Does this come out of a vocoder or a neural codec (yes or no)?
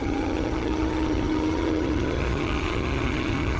yes